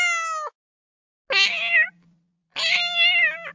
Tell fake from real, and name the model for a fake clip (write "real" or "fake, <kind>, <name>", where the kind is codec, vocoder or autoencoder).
real